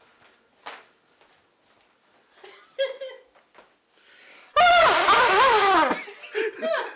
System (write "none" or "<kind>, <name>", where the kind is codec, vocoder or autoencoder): none